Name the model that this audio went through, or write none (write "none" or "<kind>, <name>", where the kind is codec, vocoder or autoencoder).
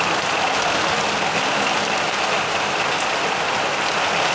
none